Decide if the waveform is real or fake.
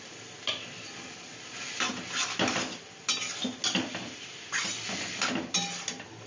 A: real